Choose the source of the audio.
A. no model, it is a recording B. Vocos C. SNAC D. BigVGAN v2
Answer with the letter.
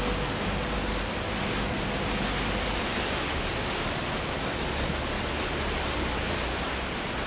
A